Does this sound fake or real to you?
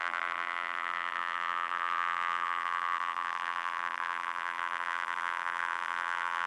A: fake